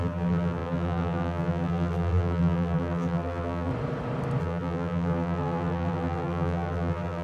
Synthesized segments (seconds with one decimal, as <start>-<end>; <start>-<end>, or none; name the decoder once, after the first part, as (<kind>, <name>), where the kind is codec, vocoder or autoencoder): 0.0-3.7 (vocoder, BigVGAN v2); 4.4-7.2